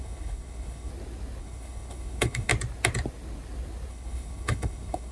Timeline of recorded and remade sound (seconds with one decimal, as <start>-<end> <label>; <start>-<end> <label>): 0.0-0.9 remade; 0.9-1.4 recorded; 1.4-2.5 remade; 2.5-3.9 recorded; 3.9-5.1 remade